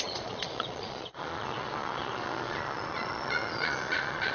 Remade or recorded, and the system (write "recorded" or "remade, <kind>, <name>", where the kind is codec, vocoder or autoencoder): remade, vocoder, Vocos